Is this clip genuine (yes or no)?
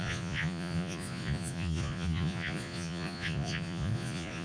no